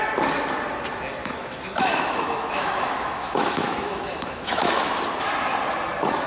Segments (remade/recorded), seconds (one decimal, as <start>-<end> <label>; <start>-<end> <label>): 0.0-1.2 recorded; 1.2-5.0 remade; 5.0-6.3 recorded